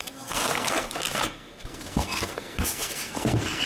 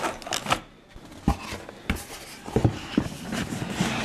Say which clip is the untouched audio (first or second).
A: second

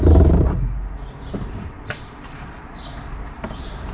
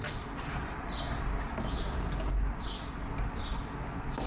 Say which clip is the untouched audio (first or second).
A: second